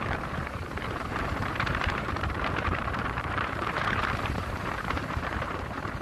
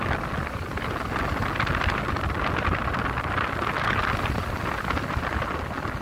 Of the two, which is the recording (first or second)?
second